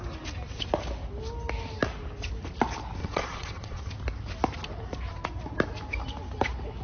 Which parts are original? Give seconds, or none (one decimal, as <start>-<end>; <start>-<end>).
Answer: 0.0-3.0; 3.9-6.8